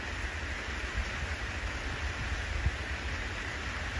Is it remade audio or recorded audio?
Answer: recorded